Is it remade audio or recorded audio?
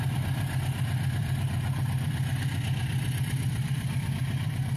remade